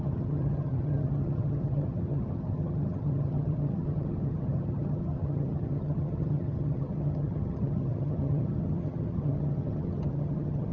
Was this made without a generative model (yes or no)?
no